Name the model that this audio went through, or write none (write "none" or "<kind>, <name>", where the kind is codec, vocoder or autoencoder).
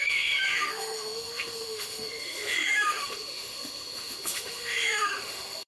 autoencoder, DAC-VAE